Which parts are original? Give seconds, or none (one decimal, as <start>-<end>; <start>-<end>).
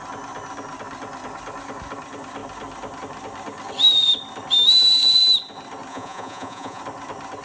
0.0-5.9; 6.8-7.4